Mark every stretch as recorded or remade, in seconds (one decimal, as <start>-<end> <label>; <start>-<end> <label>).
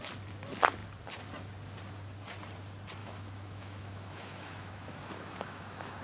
0.0-3.0 recorded; 3.0-6.0 remade